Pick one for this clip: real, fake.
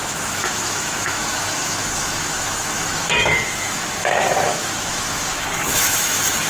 fake